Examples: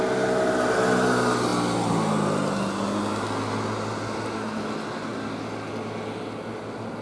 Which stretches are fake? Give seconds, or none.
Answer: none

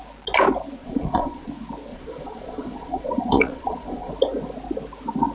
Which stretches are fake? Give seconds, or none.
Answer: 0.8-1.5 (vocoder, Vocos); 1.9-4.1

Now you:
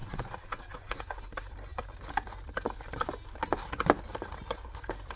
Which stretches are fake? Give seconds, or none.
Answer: 0.0-1.0 (vocoder, Vocos)

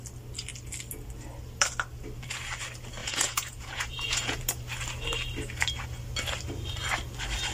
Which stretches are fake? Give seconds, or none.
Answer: 3.0-4.4 (vocoder, Vocos)

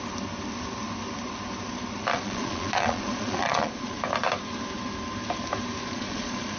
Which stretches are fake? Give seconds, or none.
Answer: 2.1-4.0 (vocoder, Vocos); 5.8-6.6